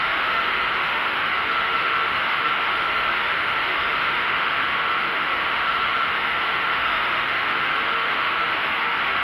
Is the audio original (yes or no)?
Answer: no